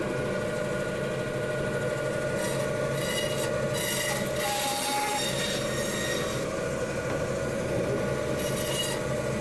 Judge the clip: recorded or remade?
recorded